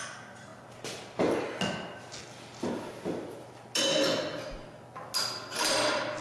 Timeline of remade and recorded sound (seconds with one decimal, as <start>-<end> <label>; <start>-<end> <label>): 0.0-6.2 recorded